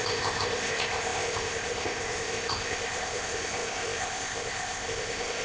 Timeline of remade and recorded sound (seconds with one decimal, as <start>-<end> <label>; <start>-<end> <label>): 0.0-5.4 remade